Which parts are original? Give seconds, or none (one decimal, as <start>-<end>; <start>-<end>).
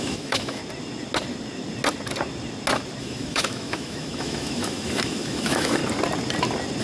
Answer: 0.6-3.0; 5.8-6.8